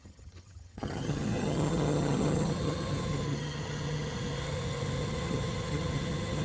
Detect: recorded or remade remade